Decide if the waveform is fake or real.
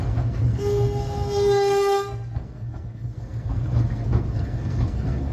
fake